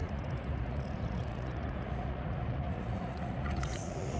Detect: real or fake fake